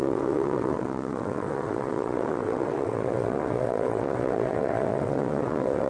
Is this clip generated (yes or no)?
yes